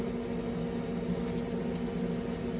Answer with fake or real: real